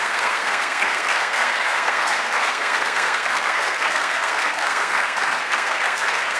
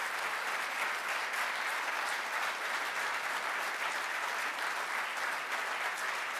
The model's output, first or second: first